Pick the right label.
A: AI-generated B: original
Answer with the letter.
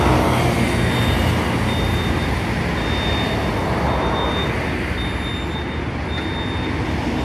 B